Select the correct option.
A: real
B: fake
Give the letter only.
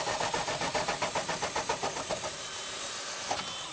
A